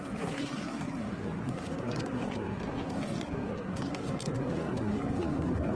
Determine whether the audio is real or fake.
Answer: fake